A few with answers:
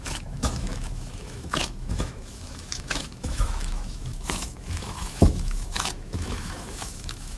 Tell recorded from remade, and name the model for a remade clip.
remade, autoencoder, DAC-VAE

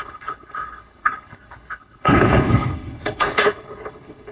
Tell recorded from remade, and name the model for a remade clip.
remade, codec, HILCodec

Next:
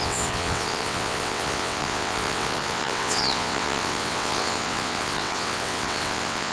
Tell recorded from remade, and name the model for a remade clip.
remade, vocoder, WaveNeXt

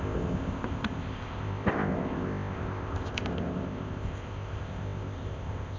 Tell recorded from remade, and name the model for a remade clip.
remade, codec, ZipCodec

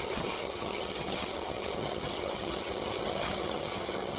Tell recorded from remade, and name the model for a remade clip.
remade, vocoder, HiFi-GAN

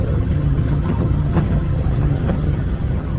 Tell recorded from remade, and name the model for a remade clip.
remade, vocoder, HiFi-GAN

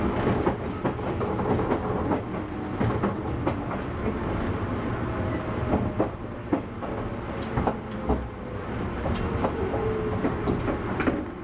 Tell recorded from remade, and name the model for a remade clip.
recorded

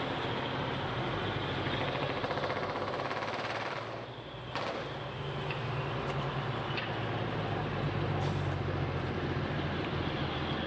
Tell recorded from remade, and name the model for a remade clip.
recorded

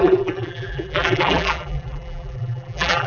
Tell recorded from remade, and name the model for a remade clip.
remade, vocoder, BigVGAN v2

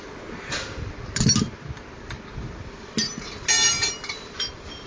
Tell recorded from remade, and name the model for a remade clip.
recorded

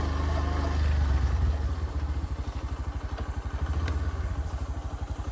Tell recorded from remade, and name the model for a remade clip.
recorded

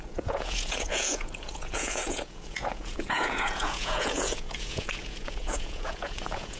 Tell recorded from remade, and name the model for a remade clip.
remade, vocoder, Vocos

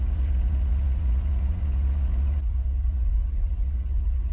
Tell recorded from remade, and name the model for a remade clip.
remade, vocoder, Vocos